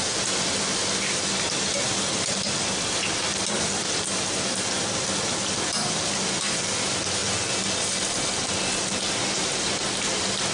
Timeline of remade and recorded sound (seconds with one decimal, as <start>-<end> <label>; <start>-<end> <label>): 0.0-10.5 recorded